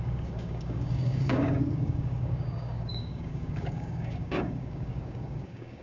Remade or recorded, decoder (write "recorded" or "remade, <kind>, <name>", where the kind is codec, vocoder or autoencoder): remade, codec, DAC